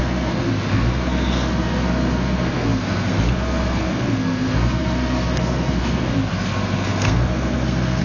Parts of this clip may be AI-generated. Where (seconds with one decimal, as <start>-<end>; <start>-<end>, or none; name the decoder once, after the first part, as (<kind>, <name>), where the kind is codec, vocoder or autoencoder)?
0.0-8.0 (codec, SNAC)